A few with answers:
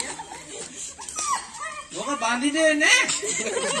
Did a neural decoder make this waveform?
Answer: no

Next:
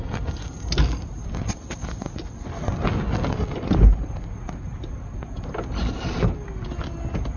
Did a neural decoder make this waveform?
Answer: no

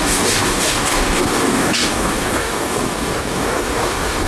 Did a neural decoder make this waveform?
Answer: yes